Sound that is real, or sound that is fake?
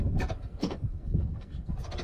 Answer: fake